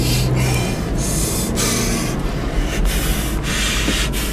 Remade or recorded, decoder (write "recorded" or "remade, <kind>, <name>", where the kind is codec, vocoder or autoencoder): recorded